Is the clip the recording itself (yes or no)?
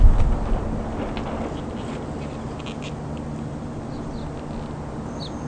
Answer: yes